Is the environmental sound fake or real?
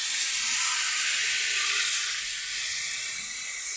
real